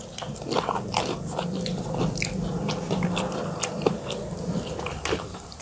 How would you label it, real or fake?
fake